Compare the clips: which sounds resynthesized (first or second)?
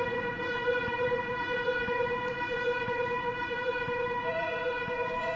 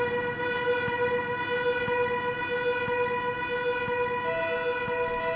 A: first